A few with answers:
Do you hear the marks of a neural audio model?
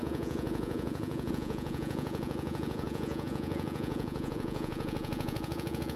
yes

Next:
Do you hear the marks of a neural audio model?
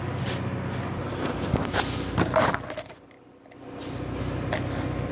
no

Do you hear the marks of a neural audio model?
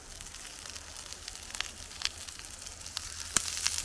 no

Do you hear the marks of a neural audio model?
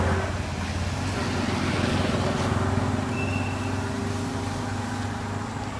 no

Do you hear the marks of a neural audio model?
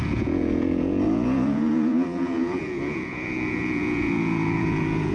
yes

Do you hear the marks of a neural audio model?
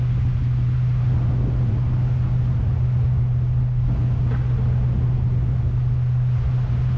no